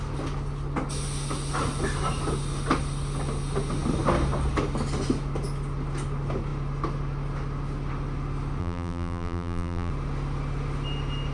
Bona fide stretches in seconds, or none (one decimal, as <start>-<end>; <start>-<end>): 0.0-8.6; 9.9-11.3